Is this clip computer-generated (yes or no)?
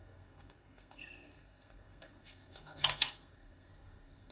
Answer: yes